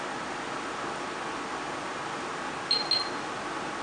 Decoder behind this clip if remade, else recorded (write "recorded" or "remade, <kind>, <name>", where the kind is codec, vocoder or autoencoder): recorded